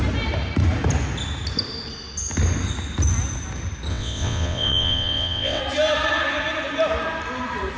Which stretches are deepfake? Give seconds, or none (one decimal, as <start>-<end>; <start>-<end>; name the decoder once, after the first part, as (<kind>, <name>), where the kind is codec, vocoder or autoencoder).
3.9-5.6 (vocoder, WaveNeXt)

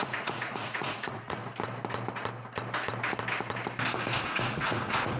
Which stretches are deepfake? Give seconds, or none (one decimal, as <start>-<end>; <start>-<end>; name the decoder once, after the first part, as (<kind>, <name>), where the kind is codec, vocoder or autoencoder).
0.0-1.4 (vocoder, Vocos); 4.2-5.2

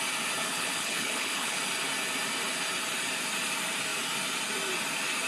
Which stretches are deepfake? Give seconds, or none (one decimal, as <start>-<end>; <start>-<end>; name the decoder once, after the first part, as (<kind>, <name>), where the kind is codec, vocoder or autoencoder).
0.5-1.6 (codec, HILCodec)

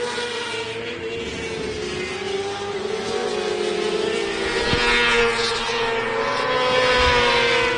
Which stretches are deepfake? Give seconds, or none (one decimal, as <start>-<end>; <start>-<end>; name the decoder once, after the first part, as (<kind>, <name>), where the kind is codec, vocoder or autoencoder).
none

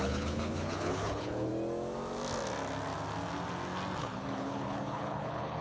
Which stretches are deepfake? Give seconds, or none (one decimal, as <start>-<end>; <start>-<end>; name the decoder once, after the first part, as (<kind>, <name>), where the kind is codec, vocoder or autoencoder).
0.0-1.5 (codec, HILCodec); 4.0-5.6

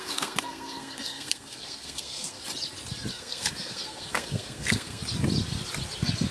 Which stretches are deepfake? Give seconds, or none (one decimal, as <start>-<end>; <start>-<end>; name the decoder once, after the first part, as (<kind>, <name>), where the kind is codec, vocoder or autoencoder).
0.0-2.4 (codec, SNAC); 3.1-5.0